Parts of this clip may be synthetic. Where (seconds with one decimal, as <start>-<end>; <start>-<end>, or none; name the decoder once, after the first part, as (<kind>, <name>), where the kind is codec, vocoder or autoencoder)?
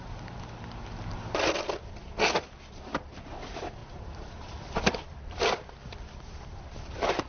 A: none